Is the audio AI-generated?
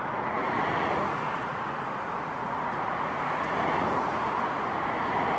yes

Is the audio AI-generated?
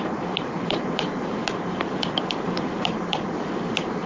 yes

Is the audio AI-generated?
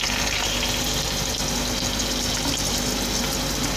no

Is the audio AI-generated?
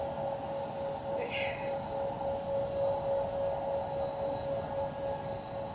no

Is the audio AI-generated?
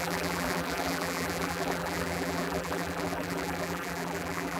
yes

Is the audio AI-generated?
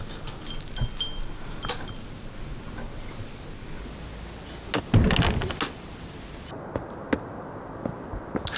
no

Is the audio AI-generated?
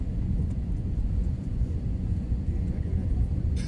yes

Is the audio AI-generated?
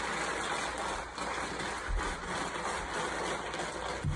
no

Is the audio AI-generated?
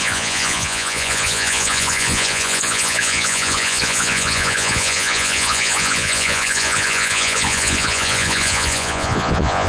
yes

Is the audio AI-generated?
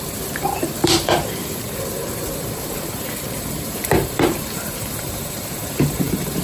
yes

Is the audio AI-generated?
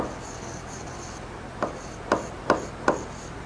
no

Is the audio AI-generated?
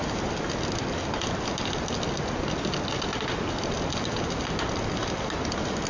no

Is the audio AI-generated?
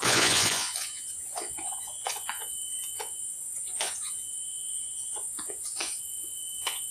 yes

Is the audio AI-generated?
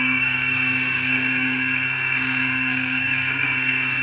yes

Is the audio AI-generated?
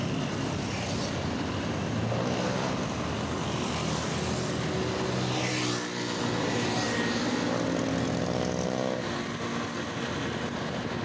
no